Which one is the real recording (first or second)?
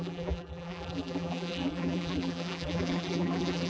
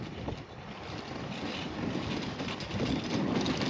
second